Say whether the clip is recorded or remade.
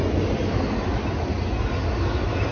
recorded